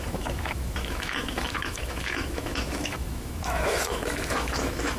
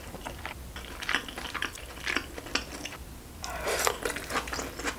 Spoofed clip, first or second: first